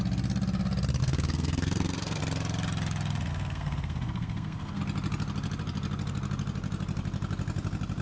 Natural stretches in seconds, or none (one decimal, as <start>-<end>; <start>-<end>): 0.0-1.0; 2.2-3.3; 4.8-8.0